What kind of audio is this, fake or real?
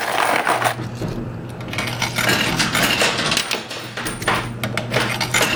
real